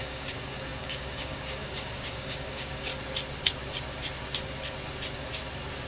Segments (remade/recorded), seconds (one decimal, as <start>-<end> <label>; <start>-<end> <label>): 0.0-2.9 remade; 2.9-5.9 recorded